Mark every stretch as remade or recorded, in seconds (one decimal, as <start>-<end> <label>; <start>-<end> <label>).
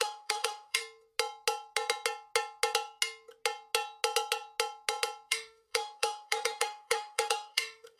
0.0-0.8 remade; 0.8-5.3 recorded; 5.3-8.0 remade